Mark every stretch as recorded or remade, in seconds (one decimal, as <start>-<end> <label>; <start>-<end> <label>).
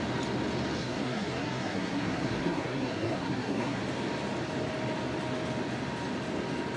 0.0-0.8 recorded; 0.8-3.8 remade; 3.8-6.8 recorded